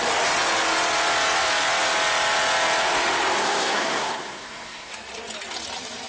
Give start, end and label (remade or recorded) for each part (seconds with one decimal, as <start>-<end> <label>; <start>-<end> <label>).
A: 0.0-3.4 recorded; 3.4-4.9 remade; 4.9-6.1 recorded